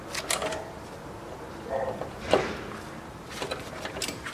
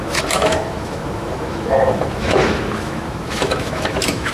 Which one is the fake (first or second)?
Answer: second